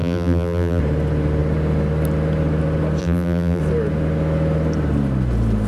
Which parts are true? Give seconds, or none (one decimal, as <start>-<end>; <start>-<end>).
0.8-3.0; 3.6-5.7